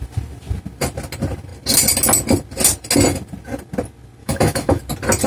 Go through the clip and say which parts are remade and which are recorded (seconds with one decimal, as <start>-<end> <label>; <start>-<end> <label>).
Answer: 0.0-4.2 recorded; 4.2-4.8 remade; 4.8-5.3 recorded